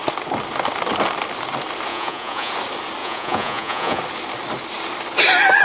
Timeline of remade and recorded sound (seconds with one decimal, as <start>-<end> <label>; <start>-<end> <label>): 0.0-1.9 recorded; 1.9-2.5 remade; 2.5-3.0 recorded; 3.0-4.0 remade; 4.0-5.6 recorded